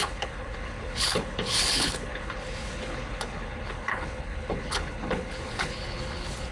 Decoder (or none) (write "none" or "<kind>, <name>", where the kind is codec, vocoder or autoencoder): codec, HILCodec